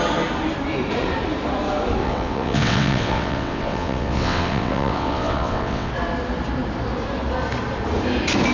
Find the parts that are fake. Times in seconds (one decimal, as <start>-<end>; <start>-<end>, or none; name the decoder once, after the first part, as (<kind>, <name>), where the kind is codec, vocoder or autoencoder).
2.0-5.9 (vocoder, WaveNeXt)